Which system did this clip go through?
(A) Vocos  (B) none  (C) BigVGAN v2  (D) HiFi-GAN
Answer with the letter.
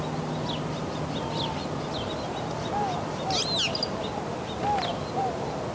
B